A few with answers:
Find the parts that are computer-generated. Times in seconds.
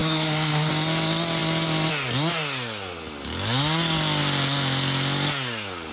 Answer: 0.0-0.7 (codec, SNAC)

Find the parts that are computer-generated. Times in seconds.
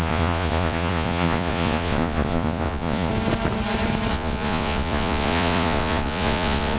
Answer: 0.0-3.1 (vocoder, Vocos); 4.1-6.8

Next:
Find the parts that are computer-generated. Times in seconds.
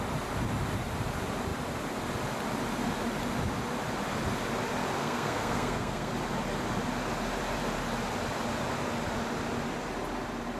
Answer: 5.0-6.1 (codec, SNAC)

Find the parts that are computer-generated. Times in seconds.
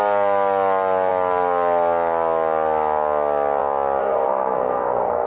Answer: 4.0-5.3 (codec, SNAC)